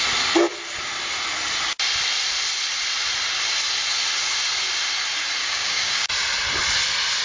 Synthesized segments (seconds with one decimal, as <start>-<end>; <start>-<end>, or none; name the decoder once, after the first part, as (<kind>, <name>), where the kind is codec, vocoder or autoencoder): 5.4-6.1 (codec, DAC)